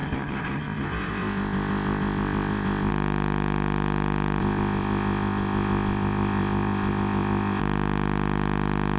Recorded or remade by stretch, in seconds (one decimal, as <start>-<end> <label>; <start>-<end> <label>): 0.0-2.9 remade; 2.9-4.4 recorded; 4.4-7.6 remade; 7.6-9.0 recorded

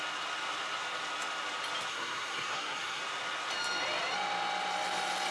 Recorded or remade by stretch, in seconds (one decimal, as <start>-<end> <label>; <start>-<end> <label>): 0.0-1.9 recorded; 1.9-3.0 remade; 3.0-5.3 recorded

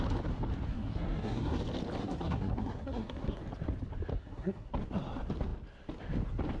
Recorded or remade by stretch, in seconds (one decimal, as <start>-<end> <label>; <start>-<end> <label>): 0.0-0.7 recorded; 0.7-1.6 remade; 1.6-2.0 recorded; 2.0-3.4 remade; 3.4-4.1 recorded; 4.1-4.7 remade; 4.7-6.6 recorded

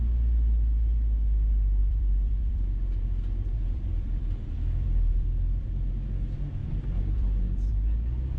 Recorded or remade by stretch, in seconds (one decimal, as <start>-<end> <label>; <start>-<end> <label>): 0.0-1.8 recorded; 1.8-5.9 remade; 5.9-6.6 recorded; 6.6-7.7 remade; 7.7-8.4 recorded

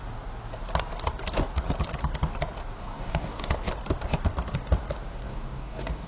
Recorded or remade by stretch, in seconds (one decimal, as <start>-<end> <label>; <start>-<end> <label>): 0.0-2.8 recorded; 2.8-3.5 remade; 3.5-5.1 recorded; 5.1-6.1 remade

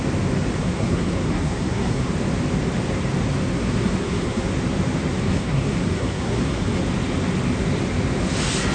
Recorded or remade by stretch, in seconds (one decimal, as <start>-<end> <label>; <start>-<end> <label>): 0.0-0.6 recorded; 0.6-2.1 remade; 2.1-3.5 recorded; 3.5-4.5 remade; 4.5-5.2 recorded; 5.2-6.8 remade; 6.8-8.7 recorded

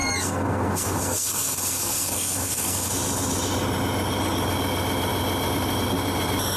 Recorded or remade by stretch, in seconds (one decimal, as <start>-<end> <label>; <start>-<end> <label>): 0.0-2.9 remade; 2.9-6.6 recorded